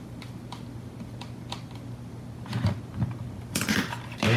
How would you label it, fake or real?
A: real